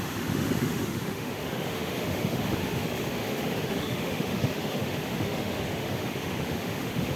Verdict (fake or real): fake